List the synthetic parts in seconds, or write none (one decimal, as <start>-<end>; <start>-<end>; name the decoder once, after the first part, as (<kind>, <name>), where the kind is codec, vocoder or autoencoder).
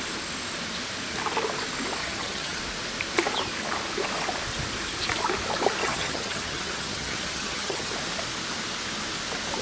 2.0-2.6 (vocoder, HiFi-GAN); 5.8-7.9